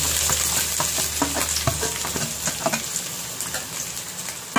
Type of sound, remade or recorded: recorded